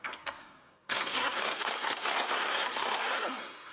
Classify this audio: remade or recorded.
remade